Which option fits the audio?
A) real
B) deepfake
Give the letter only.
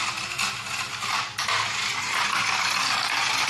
A